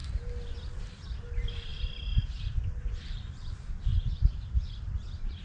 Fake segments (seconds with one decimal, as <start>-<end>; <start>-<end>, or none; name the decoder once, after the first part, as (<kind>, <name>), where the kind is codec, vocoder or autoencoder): 0.8-5.4 (vocoder, BigVGAN v2)